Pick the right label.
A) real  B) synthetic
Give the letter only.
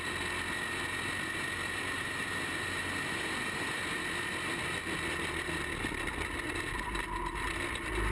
A